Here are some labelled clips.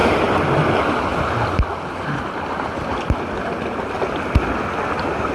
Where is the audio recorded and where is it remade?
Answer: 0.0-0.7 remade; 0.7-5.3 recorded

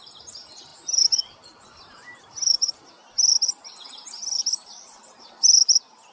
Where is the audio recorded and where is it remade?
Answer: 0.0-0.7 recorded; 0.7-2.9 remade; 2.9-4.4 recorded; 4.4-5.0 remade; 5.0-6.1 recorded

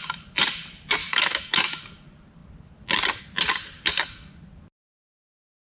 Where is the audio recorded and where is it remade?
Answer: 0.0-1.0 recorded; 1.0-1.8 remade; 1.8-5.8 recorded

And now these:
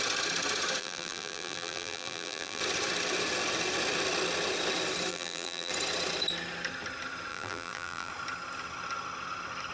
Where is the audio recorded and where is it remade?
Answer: 0.0-0.8 recorded; 0.8-2.6 remade; 2.6-5.1 recorded; 5.1-5.7 remade; 5.7-7.3 recorded; 7.3-8.1 remade; 8.1-9.7 recorded

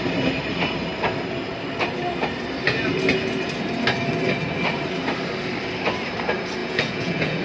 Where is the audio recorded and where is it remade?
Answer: 0.0-6.6 recorded; 6.6-7.4 remade

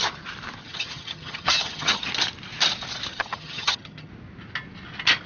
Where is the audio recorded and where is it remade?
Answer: 0.0-0.6 recorded; 0.6-2.1 remade; 2.1-3.1 recorded; 3.1-4.1 remade; 4.1-5.3 recorded